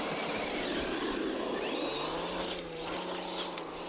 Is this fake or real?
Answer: real